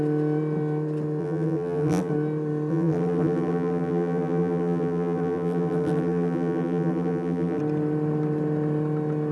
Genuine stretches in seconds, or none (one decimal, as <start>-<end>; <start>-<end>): 0.0-1.2; 2.1-2.7; 7.6-9.3